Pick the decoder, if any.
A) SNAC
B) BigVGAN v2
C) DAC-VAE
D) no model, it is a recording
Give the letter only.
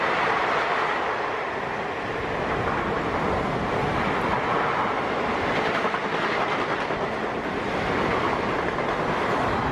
D